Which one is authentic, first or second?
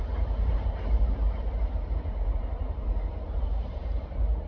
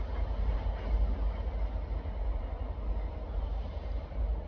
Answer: second